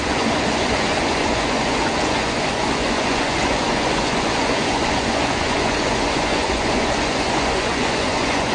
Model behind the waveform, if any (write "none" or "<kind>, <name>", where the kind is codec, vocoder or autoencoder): vocoder, Vocos